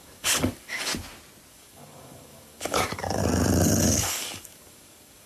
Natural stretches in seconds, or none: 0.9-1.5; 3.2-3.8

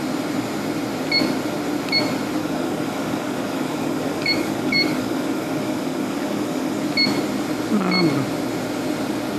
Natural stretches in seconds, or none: 0.0-2.4; 6.8-9.4

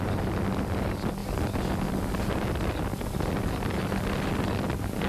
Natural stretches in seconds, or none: 0.0-5.1

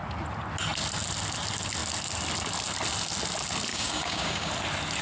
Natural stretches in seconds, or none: 0.0-3.7; 4.5-5.0

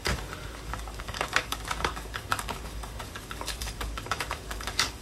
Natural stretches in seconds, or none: none

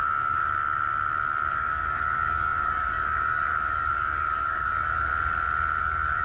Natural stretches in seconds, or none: 0.4-1.5; 5.1-5.8

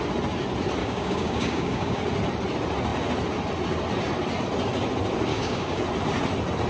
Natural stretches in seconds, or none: 0.0-0.8; 2.0-5.3; 5.8-6.7